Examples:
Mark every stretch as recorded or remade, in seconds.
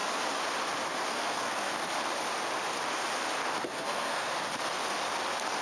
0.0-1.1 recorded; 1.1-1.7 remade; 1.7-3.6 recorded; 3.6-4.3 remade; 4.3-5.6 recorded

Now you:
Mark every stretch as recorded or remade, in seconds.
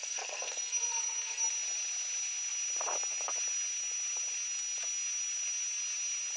0.0-1.5 remade; 1.5-6.4 recorded